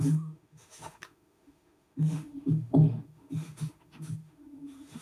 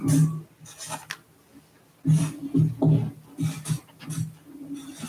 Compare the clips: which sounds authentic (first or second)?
second